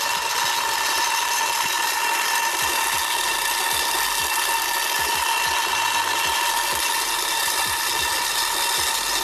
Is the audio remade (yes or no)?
no